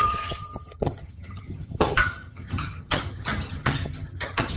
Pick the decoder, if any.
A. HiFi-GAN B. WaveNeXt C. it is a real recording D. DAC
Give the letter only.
A